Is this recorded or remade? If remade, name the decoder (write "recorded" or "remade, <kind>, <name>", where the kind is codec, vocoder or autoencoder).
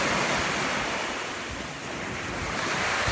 recorded